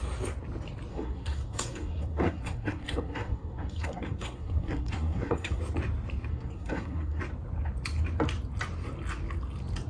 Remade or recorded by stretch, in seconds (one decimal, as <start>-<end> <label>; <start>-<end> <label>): 0.0-0.9 recorded; 0.9-5.6 remade; 5.6-6.3 recorded; 6.3-7.2 remade; 7.2-9.9 recorded